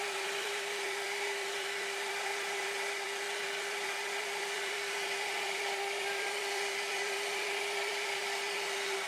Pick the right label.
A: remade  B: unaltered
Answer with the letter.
A